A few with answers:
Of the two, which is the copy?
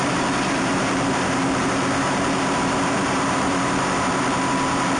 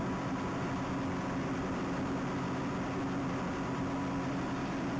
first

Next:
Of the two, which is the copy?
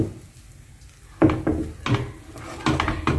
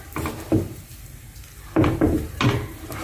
second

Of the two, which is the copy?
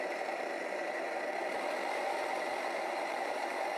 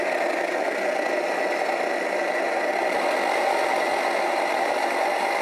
first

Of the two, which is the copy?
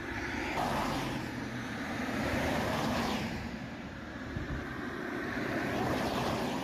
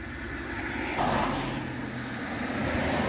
first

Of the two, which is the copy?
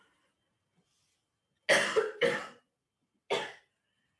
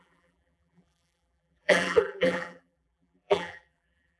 second